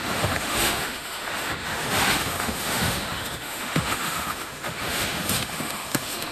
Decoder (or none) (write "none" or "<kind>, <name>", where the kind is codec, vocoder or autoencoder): autoencoder, DAC-VAE